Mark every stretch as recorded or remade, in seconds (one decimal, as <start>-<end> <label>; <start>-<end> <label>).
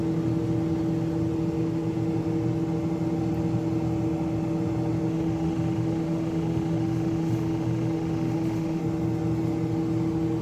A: 0.0-5.1 recorded; 5.1-8.8 remade; 8.8-10.4 recorded